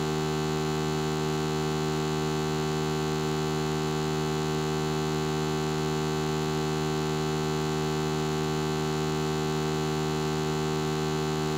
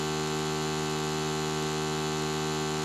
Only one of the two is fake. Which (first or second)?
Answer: second